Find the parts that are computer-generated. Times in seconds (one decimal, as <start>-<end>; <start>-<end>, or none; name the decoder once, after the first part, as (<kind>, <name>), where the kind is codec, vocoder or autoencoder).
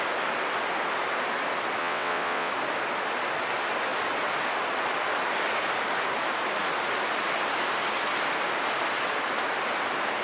1.8-2.5 (vocoder, WaveNeXt)